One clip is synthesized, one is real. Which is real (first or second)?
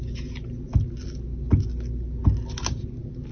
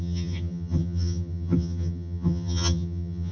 first